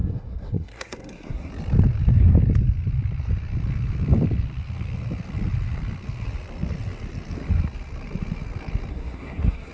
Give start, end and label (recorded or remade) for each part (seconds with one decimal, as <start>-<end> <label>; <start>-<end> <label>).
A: 0.0-1.5 remade; 1.5-8.9 recorded; 8.9-9.7 remade